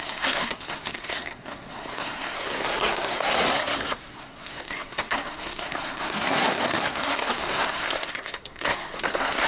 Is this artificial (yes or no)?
yes